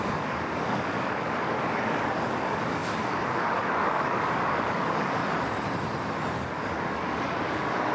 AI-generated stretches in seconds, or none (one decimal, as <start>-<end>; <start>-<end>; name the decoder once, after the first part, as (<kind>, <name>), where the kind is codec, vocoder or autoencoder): 0.0-5.2 (codec, DAC); 6.3-7.9